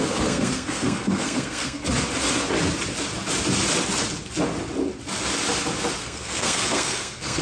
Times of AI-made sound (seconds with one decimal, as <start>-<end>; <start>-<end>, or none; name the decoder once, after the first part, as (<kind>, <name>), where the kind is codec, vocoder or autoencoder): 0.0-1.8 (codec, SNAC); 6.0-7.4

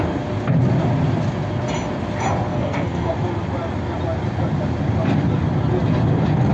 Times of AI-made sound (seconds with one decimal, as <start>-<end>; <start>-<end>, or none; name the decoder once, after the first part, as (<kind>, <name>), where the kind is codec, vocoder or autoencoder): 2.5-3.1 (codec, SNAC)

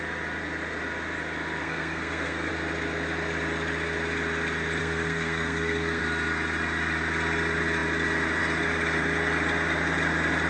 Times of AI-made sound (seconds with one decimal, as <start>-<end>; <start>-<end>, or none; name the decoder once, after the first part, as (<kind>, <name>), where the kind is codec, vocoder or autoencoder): 1.6-2.5 (codec, SNAC); 4.8-6.0

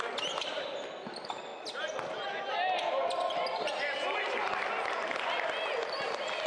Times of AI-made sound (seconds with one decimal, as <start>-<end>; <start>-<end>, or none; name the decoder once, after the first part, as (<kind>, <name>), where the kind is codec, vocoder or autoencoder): none

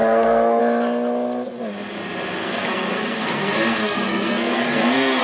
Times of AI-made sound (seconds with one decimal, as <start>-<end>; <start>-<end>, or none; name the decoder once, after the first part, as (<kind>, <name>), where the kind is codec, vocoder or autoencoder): 0.0-0.6 (codec, SNAC); 2.4-5.2

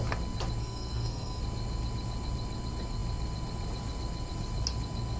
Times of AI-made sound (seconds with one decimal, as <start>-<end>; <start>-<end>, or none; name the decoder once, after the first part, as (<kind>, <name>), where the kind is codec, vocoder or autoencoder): 0.6-1.4 (codec, SNAC)

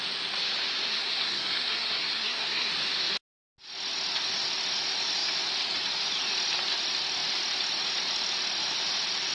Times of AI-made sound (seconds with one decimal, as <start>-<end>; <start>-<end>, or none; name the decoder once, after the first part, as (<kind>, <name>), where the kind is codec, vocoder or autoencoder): 0.9-2.7 (codec, SNAC)

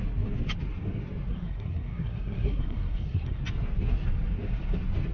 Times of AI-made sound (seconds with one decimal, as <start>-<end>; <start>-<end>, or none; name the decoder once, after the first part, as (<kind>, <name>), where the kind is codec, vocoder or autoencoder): 1.3-3.4 (codec, SNAC)